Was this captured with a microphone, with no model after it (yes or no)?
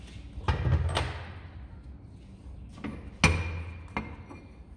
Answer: yes